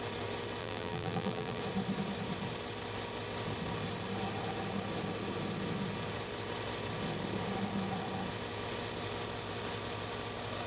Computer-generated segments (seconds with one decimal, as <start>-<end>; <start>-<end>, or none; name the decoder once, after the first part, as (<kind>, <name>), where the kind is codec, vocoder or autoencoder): 0.6-1.6 (vocoder, BigVGAN v2)